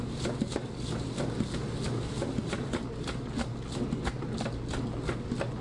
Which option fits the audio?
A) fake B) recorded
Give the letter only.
B